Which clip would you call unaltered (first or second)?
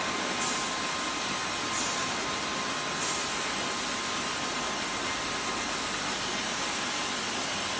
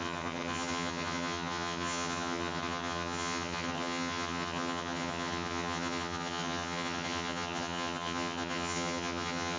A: first